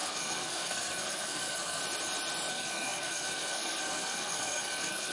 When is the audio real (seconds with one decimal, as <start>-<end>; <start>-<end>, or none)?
1.8-2.5